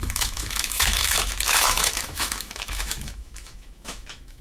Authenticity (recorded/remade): remade